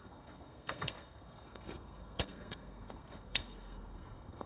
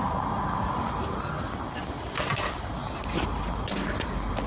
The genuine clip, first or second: second